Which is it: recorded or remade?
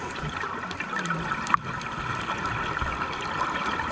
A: recorded